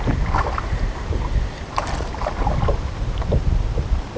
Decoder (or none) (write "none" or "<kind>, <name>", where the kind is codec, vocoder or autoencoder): none